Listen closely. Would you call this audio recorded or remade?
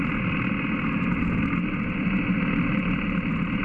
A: recorded